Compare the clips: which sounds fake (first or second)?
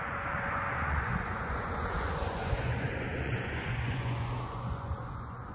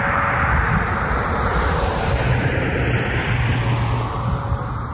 first